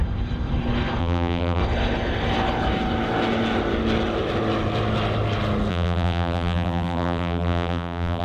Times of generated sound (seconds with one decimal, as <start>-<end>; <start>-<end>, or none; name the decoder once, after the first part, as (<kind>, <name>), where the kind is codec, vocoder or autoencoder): 1.0-1.6 (vocoder, BigVGAN v2); 5.7-8.2